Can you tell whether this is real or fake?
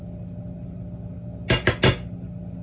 real